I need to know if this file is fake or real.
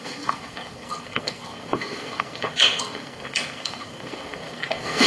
fake